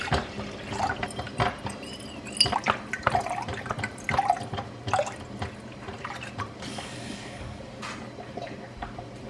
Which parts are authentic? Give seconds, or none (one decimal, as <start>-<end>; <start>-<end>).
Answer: 0.0-6.7; 7.6-9.3